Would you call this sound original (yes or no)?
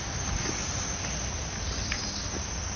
yes